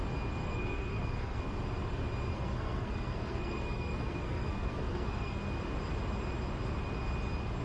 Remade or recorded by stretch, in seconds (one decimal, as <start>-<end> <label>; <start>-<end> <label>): 0.0-0.4 recorded; 0.4-1.4 remade; 1.4-2.3 recorded; 2.3-5.4 remade; 5.4-7.6 recorded